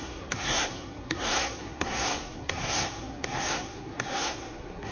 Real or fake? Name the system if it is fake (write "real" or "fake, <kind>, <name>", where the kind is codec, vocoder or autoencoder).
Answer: fake, codec, SNAC